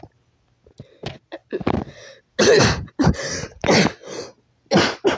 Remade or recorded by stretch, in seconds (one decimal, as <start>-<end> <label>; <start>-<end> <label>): 0.0-1.4 recorded; 1.4-2.2 remade; 2.2-5.2 recorded